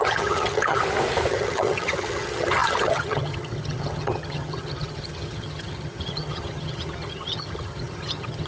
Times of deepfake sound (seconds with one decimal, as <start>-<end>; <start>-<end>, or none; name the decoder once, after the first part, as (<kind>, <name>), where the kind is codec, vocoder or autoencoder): 0.0-0.8 (vocoder, HiFi-GAN); 1.3-8.5